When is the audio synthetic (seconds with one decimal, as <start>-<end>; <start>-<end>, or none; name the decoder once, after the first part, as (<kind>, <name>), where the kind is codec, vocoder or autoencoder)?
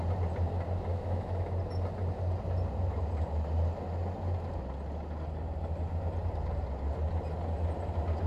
0.9-1.5 (autoencoder, DAC-VAE)